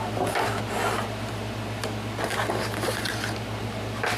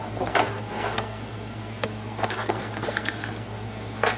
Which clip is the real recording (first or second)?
first